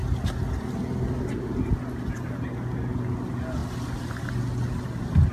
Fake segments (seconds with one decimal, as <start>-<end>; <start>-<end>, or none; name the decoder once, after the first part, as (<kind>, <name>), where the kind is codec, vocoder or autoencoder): none